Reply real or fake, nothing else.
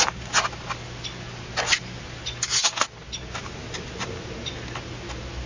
real